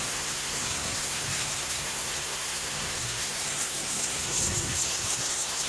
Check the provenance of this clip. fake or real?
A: fake